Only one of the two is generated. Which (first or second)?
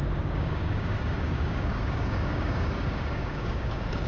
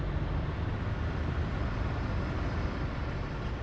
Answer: first